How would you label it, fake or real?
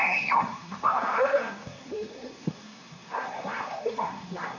fake